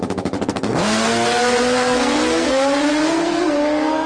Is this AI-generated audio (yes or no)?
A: yes